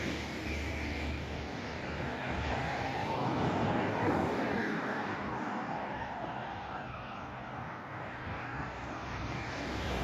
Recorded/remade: remade